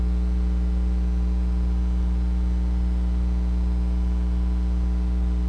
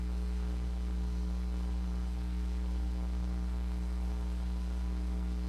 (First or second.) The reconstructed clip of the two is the second